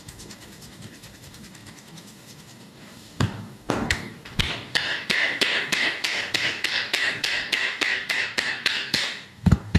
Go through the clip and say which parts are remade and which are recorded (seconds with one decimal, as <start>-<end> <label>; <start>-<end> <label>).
0.0-9.8 remade